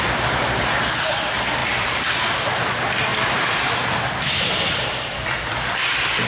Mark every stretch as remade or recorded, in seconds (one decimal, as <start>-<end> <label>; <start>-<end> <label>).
0.0-0.4 recorded; 0.4-1.1 remade; 1.1-1.6 recorded; 1.6-2.4 remade; 2.4-3.1 recorded; 3.1-6.3 remade